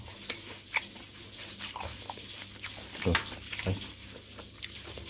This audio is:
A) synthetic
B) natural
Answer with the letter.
B